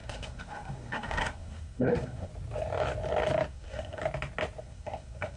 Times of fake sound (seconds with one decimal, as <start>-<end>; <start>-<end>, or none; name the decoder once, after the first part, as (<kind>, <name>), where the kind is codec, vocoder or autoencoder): 0.0-2.3 (codec, SNAC); 3.5-4.0; 4.6-5.4